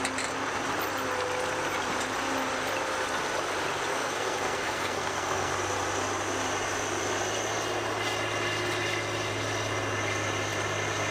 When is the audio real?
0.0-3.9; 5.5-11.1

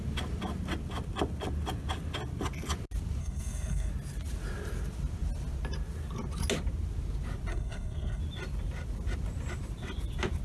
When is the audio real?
0.0-3.2; 3.9-7.5; 8.2-10.4

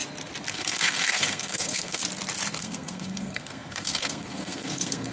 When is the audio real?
0.0-0.5; 2.0-2.6